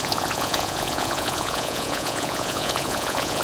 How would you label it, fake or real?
fake